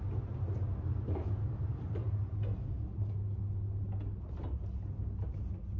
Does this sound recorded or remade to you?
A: recorded